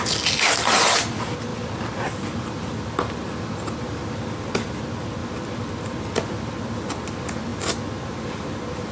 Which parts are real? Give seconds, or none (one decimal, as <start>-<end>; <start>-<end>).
0.0-1.5; 4.8-5.2; 5.8-8.9